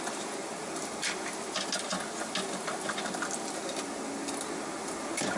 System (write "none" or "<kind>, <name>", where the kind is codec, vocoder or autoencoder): none